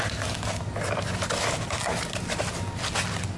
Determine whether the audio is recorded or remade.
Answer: recorded